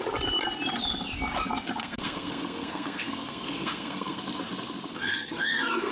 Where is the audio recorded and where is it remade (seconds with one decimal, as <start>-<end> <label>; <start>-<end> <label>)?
0.0-1.8 recorded; 1.8-4.2 remade; 4.2-4.9 recorded; 4.9-5.9 remade